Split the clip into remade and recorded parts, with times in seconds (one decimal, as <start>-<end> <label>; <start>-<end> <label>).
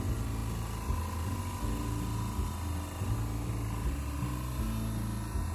0.0-5.5 recorded